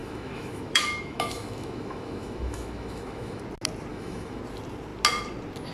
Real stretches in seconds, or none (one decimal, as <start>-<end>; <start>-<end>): 3.4-3.9; 4.4-5.7